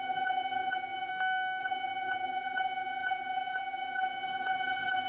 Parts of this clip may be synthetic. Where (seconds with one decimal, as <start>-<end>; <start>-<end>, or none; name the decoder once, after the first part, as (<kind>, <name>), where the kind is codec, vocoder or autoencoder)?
0.0-1.1 (vocoder, HiFi-GAN); 1.6-5.1